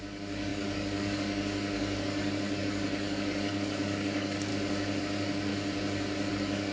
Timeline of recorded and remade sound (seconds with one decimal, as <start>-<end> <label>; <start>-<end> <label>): 0.0-4.5 remade; 4.5-5.0 recorded; 5.0-5.5 remade; 5.5-6.3 recorded; 6.3-6.7 remade